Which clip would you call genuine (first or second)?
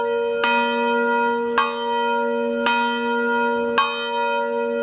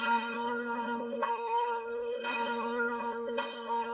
first